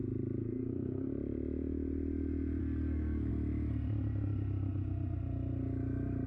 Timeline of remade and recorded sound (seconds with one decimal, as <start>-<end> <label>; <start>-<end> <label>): 0.0-0.4 recorded; 0.4-1.1 remade; 1.1-2.6 recorded; 2.6-3.3 remade; 3.3-6.3 recorded